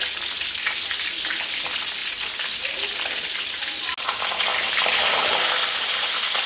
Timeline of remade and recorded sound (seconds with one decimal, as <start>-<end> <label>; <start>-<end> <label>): 0.0-4.5 recorded; 4.5-5.4 remade; 5.4-6.5 recorded